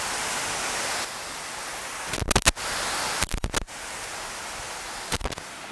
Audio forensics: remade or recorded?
recorded